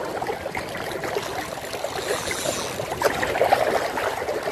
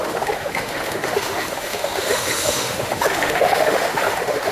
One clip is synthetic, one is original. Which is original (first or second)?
first